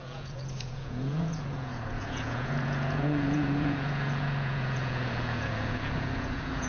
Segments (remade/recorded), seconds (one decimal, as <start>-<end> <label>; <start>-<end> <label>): 0.0-6.7 remade